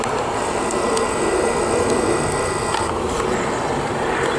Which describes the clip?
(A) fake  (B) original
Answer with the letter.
B